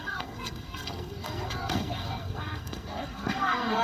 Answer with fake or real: fake